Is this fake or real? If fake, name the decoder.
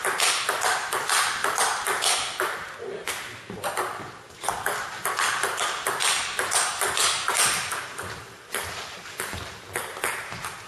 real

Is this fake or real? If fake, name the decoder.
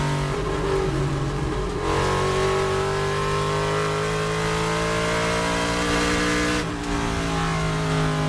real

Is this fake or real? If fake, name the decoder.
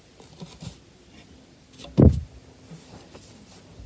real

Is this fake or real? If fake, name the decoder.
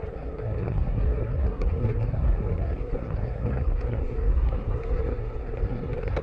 fake, codec, SNAC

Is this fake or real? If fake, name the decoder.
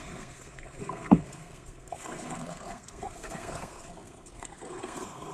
fake, codec, SNAC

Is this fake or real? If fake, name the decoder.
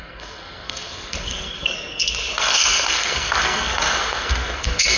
fake, codec, SNAC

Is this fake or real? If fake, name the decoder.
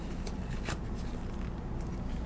real